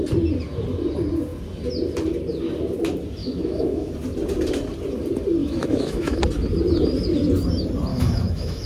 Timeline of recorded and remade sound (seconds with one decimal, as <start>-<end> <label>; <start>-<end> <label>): 0.0-3.2 recorded; 3.2-3.9 remade; 3.9-5.4 recorded; 5.4-6.2 remade; 6.2-7.9 recorded; 7.9-8.7 remade

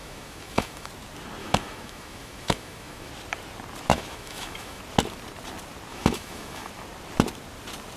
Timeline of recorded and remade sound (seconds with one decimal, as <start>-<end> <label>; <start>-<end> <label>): 0.0-0.9 remade; 0.9-1.4 recorded; 1.4-3.1 remade; 3.1-3.9 recorded; 3.9-4.8 remade; 4.8-5.9 recorded; 5.9-6.7 remade; 6.7-8.0 recorded